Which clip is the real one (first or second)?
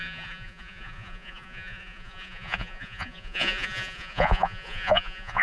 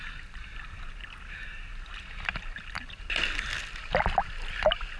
second